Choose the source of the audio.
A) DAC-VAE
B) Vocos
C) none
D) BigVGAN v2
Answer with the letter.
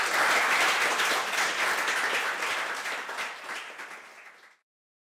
C